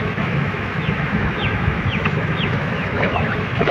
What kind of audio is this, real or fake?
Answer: fake